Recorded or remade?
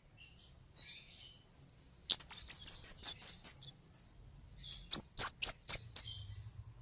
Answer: recorded